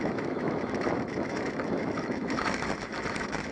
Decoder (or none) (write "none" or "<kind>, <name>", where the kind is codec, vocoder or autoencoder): autoencoder, DAC-VAE